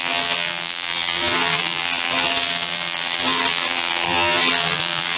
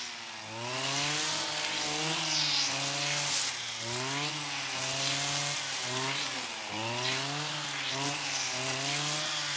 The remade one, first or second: first